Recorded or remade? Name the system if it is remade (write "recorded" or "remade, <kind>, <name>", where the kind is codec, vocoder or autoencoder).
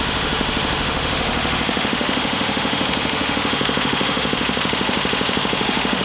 remade, autoencoder, DAC-VAE